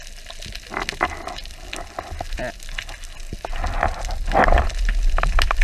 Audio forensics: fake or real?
real